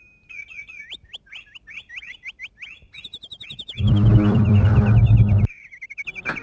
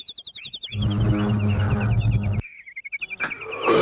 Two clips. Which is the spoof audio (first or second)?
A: first